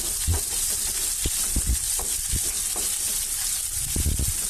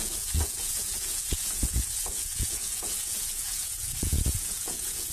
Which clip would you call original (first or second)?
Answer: first